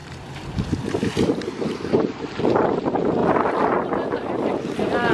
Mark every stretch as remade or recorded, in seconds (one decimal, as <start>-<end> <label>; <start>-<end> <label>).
0.0-2.4 remade; 2.4-5.1 recorded